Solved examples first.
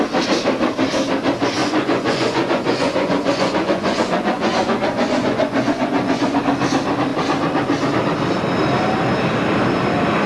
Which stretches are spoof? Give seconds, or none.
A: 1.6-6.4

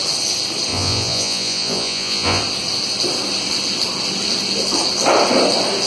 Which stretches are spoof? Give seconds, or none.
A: 0.7-2.4

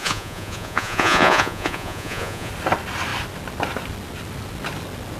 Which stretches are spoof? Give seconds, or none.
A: 0.0-2.5

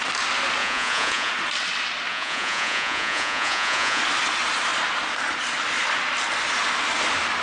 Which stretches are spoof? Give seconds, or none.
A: 0.6-1.3; 2.1-4.0

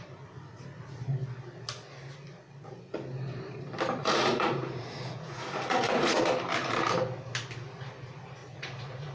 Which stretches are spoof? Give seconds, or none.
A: 4.0-6.2; 8.4-9.1